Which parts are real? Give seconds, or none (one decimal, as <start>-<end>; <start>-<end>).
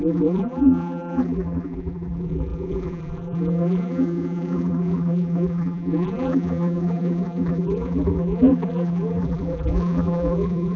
none